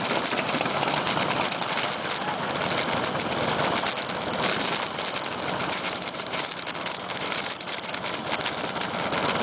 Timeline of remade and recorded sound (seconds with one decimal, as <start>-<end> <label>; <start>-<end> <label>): 0.0-5.6 recorded; 5.6-7.9 remade; 7.9-9.4 recorded